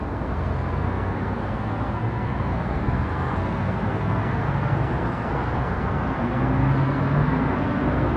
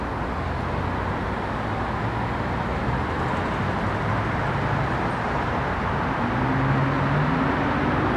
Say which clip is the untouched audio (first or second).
second